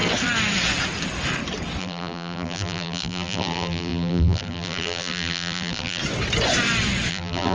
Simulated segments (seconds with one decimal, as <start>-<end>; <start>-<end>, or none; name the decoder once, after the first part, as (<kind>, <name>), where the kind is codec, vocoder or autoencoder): 1.8-6.0 (vocoder, BigVGAN v2); 7.1-7.5